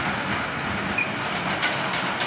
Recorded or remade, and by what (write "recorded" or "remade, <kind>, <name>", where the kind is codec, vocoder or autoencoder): recorded